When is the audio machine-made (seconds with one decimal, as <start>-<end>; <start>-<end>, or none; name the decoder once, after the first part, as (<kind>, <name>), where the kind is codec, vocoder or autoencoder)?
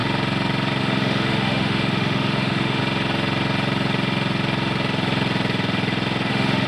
0.8-2.8 (autoencoder, DAC-VAE); 6.3-6.7